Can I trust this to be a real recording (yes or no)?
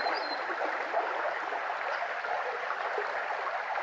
yes